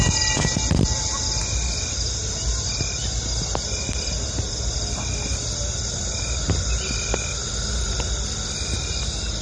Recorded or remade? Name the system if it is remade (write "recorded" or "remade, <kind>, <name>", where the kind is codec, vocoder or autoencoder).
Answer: recorded